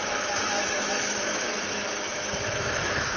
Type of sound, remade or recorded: remade